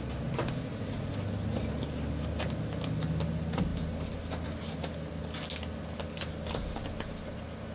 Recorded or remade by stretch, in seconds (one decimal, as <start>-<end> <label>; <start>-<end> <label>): 0.0-7.7 recorded